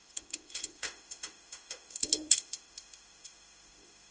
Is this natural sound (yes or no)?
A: no